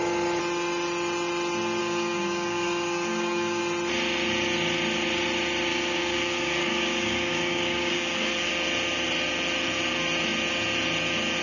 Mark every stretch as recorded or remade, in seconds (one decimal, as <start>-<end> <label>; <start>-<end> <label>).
0.0-1.8 recorded; 1.8-3.6 remade; 3.6-5.7 recorded; 5.7-8.5 remade; 8.5-11.4 recorded